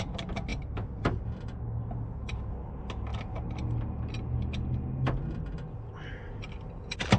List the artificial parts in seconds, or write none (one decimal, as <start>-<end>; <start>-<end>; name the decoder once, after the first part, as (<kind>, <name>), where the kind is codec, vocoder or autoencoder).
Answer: none

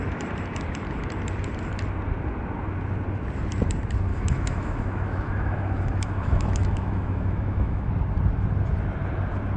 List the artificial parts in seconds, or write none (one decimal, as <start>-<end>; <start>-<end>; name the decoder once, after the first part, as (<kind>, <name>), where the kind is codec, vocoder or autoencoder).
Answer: 4.1-7.9 (autoencoder, DAC-VAE)